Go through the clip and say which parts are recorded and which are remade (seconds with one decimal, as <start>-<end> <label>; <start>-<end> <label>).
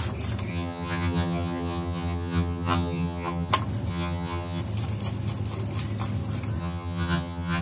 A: 0.0-0.5 recorded; 0.5-3.5 remade; 3.5-3.9 recorded; 3.9-4.6 remade; 4.6-6.6 recorded; 6.6-7.6 remade